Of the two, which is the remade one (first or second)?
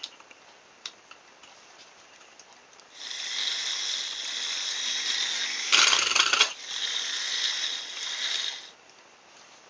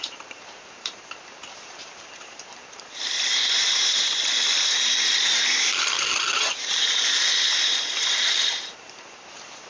second